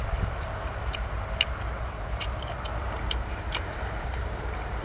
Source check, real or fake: fake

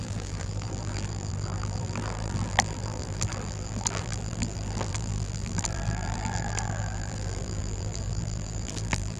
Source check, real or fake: fake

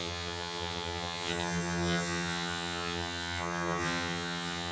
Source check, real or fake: fake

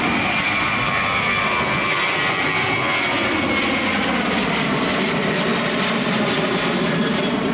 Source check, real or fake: real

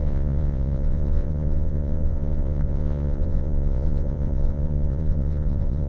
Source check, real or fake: fake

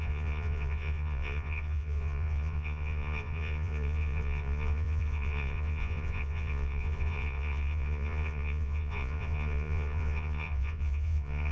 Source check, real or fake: fake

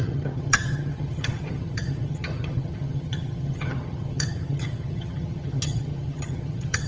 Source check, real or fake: fake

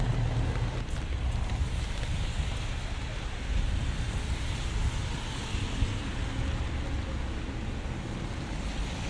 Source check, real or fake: real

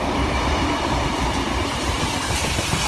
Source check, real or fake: fake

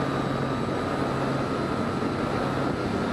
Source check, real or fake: real